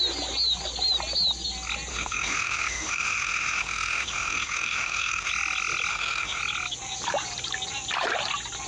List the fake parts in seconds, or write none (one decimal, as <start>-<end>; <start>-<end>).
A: 1.9-5.3; 5.9-6.4